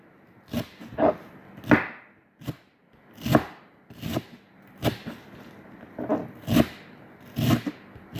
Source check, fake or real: real